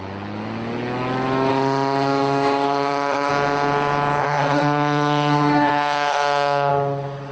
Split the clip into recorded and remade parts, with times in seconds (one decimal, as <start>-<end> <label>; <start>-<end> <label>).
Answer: 0.0-1.5 recorded; 1.5-3.3 remade; 3.3-4.2 recorded; 4.2-6.7 remade; 6.7-7.3 recorded